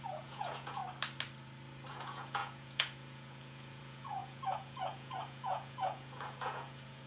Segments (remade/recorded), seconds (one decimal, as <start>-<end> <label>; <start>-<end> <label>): 0.0-0.8 remade; 0.8-1.9 recorded; 1.9-7.1 remade